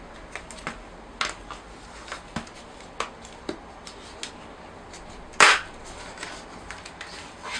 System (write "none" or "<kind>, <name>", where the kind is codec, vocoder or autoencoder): none